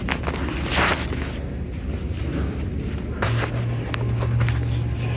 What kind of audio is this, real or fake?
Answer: real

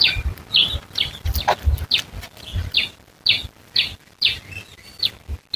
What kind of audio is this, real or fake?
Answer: real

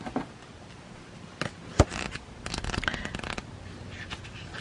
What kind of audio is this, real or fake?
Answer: real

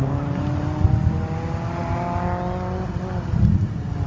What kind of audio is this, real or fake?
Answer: real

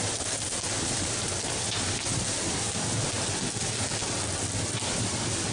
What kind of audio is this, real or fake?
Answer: real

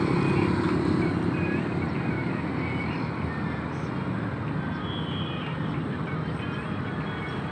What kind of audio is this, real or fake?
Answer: real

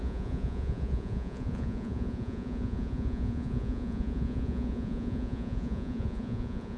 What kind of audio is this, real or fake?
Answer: fake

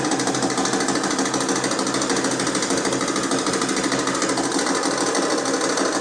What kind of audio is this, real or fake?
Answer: real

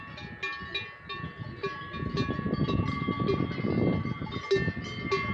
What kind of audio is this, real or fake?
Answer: real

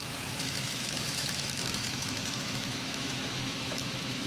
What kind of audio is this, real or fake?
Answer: fake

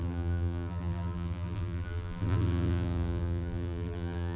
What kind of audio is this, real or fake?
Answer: fake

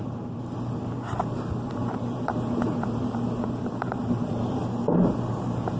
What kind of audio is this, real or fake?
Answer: fake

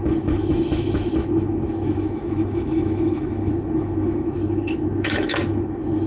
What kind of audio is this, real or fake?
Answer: fake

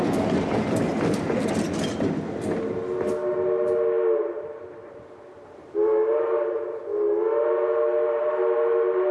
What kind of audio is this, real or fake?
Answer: real